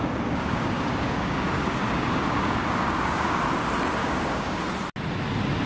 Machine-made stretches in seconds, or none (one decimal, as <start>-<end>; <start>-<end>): 0.0-3.4; 4.0-4.6